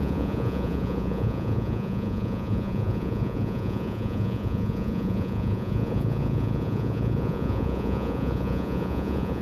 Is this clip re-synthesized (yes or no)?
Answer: yes